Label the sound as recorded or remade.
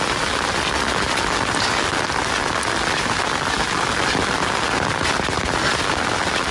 recorded